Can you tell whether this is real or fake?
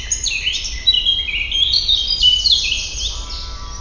real